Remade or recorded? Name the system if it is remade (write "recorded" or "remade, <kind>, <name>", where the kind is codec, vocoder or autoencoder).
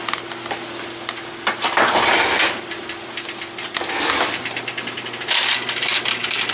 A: recorded